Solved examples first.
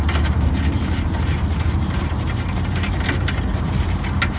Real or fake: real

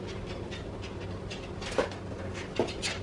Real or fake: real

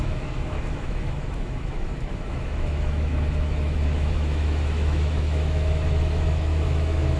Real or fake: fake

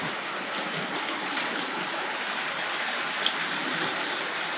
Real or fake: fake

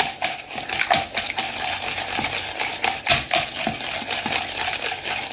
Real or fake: real